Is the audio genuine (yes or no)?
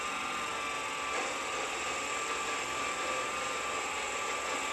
yes